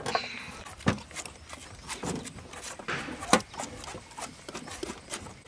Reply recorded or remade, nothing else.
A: recorded